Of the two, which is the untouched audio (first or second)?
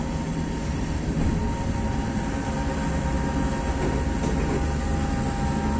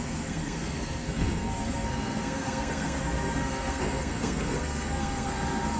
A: first